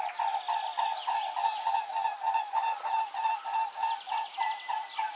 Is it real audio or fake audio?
real